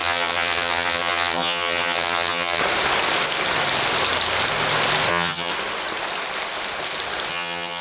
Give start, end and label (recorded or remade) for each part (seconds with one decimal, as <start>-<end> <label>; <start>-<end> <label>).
0.0-2.6 remade; 2.6-5.1 recorded; 5.1-5.5 remade; 5.5-7.3 recorded; 7.3-7.8 remade